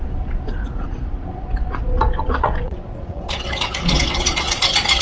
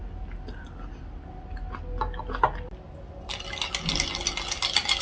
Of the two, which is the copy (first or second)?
first